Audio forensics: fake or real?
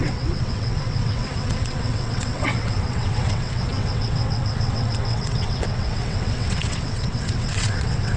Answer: fake